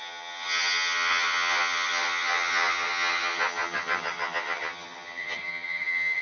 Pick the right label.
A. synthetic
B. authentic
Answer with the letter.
A